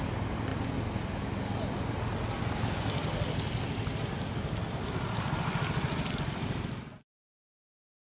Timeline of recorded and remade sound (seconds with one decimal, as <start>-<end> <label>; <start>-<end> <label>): 0.0-8.0 recorded